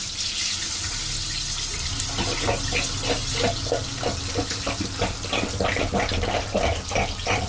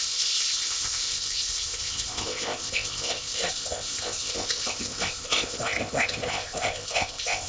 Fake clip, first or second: second